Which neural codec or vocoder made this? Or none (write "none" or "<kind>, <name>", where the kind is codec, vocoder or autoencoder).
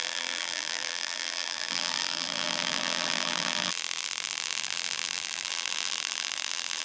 vocoder, BigVGAN v2